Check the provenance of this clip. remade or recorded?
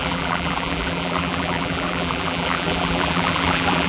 remade